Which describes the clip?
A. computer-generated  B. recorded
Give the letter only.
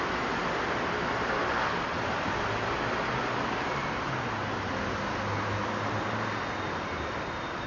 B